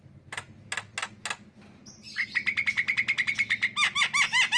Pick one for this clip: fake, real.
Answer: real